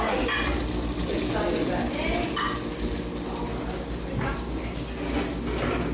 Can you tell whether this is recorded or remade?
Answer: recorded